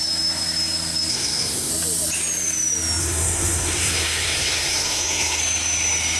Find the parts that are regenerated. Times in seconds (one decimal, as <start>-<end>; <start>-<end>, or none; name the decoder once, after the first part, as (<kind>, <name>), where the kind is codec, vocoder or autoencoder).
1.1-1.7 (codec, SNAC); 3.0-5.4